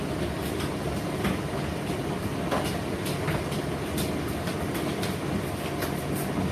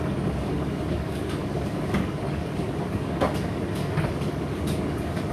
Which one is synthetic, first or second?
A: second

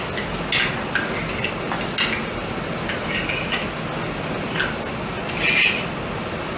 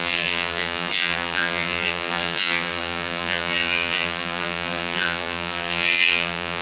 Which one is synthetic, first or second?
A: second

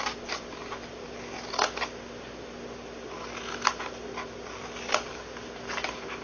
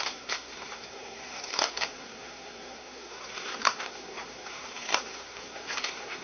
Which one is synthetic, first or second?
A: second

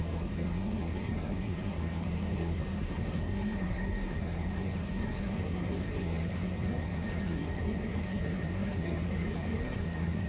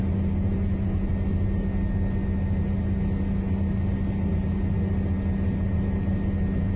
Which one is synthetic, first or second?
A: first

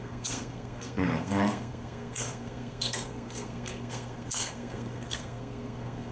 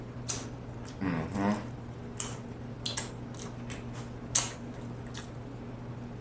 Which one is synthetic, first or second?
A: first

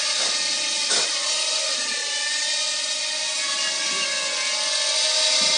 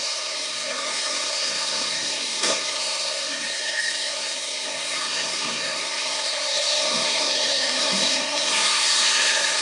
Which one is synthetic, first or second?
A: second